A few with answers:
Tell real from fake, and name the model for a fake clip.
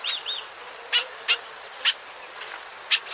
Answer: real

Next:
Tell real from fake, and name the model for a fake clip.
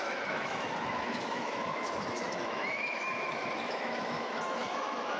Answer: fake, autoencoder, DAC-VAE